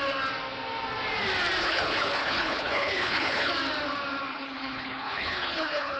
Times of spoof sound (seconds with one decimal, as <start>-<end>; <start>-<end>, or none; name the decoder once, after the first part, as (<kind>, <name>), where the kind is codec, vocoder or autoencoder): 1.6-3.5 (codec, HILCodec); 4.3-6.0